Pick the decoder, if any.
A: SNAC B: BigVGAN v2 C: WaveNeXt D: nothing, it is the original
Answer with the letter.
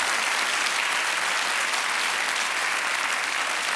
D